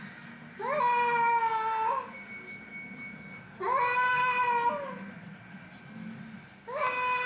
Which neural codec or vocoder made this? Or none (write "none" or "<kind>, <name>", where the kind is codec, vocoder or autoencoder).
none